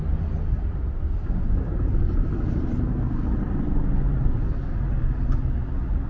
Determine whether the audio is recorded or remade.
recorded